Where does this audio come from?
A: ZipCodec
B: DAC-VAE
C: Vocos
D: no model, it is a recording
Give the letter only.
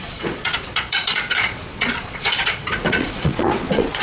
C